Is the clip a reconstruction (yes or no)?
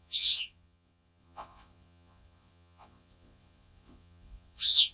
yes